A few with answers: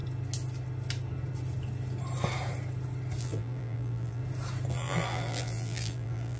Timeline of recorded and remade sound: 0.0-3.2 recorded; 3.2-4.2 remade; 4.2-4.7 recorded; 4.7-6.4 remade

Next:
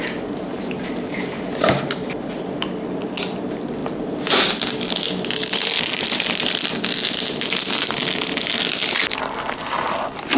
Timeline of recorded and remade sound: 0.0-10.4 recorded